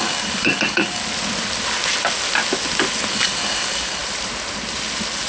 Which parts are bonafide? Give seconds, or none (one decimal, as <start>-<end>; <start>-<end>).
1.0-3.1; 4.0-5.3